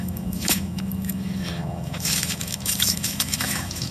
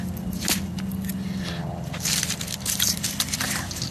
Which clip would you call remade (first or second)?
first